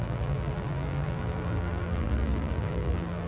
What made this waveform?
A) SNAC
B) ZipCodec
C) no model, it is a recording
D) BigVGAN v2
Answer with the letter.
D